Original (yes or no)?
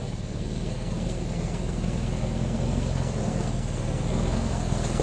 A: no